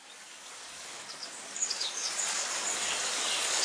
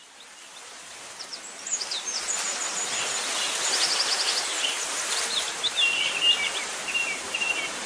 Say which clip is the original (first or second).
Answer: second